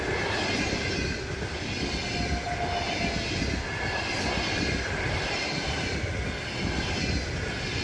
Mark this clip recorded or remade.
recorded